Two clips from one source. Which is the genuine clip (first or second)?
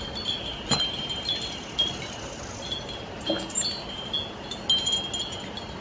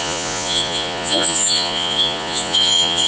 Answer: first